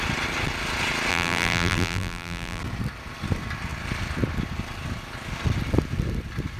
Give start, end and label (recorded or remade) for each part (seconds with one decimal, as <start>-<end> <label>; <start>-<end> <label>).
0.0-1.1 recorded; 1.1-2.6 remade; 2.6-6.6 recorded